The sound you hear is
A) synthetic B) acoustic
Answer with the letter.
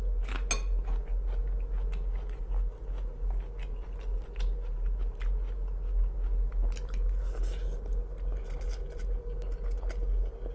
B